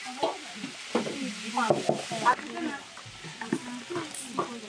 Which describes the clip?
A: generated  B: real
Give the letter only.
B